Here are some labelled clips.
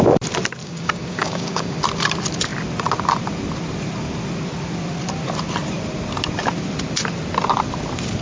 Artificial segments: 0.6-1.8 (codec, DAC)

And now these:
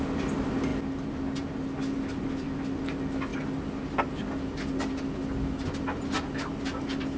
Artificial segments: none

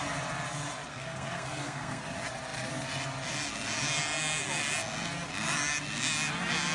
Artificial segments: 0.9-2.0 (codec, SNAC)